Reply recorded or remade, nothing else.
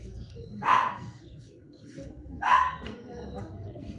remade